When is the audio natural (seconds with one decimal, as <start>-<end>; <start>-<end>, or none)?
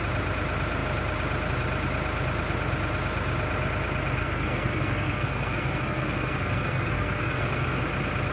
0.0-4.2; 7.8-8.3